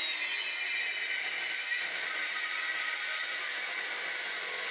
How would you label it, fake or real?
real